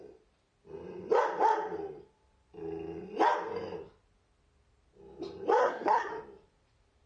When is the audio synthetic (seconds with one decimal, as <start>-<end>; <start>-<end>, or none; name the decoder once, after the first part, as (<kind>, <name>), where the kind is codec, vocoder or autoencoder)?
5.6-6.1 (codec, SNAC)